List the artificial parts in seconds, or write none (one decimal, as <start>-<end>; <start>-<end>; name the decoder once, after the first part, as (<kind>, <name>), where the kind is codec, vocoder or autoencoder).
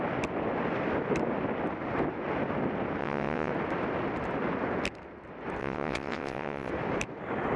3.0-3.5 (vocoder, WaveNeXt); 5.6-6.7